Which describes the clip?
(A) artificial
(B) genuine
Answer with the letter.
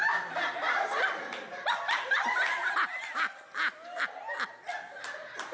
B